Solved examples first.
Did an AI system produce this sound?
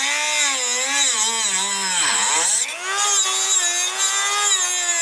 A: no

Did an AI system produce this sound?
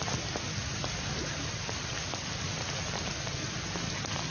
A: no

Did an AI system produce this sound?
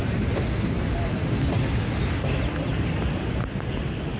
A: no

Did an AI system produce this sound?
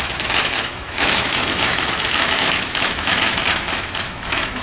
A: yes